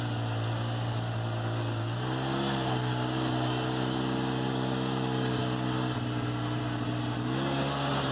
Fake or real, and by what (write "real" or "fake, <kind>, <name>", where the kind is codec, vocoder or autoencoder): real